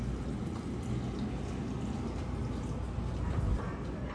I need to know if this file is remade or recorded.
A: recorded